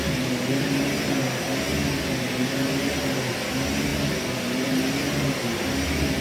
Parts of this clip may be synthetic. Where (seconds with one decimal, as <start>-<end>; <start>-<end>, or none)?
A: none